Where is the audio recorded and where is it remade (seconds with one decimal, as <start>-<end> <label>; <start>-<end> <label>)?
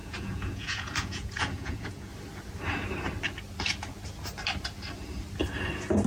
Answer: 0.0-2.1 remade; 2.1-6.1 recorded